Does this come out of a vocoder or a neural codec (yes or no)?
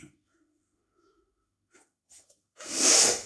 yes